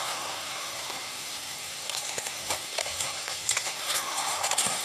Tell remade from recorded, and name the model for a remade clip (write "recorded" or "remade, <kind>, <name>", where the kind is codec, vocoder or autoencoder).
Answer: remade, codec, SNAC